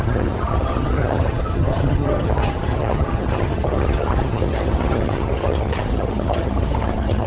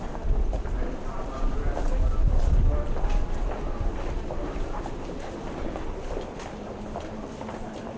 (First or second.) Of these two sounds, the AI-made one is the first